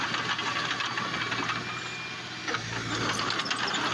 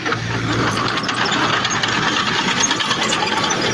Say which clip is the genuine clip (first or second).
first